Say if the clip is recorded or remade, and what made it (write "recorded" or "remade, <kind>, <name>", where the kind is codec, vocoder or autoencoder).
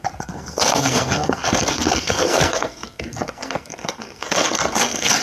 remade, codec, SNAC